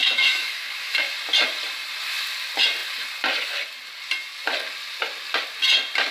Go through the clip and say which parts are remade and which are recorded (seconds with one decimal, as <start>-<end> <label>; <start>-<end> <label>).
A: 0.0-1.0 remade; 1.0-6.1 recorded